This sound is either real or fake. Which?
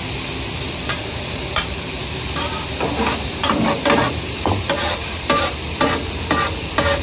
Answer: real